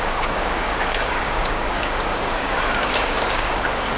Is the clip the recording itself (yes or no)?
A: no